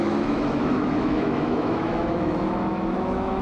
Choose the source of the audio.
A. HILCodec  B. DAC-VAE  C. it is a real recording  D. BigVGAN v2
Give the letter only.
B